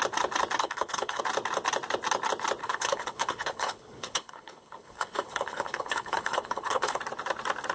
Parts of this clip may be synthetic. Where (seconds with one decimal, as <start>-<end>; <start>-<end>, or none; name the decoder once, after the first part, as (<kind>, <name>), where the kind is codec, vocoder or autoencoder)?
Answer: 0.6-1.2 (codec, HILCodec); 2.6-7.0